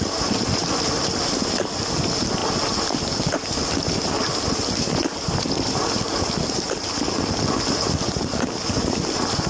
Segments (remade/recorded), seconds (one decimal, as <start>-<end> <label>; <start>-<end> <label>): 0.0-9.5 recorded